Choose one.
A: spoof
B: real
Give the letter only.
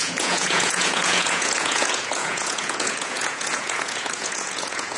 A